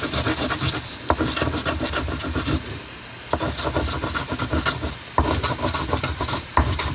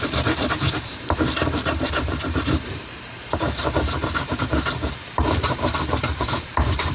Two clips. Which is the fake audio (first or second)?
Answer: second